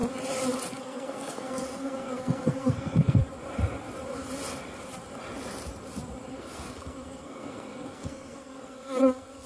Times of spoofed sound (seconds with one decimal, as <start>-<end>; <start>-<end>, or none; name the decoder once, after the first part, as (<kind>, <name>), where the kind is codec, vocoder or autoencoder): 0.8-3.2 (codec, SNAC); 6.3-9.5